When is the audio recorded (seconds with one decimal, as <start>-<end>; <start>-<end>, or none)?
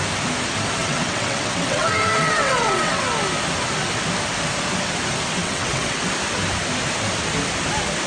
0.0-0.8; 3.0-5.4; 6.0-8.1